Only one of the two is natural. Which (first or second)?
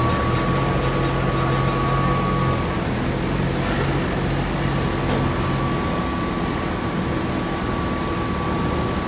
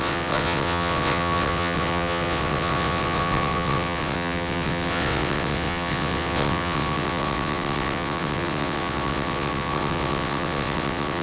first